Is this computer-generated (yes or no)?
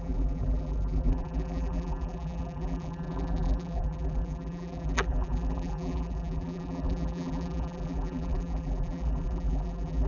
yes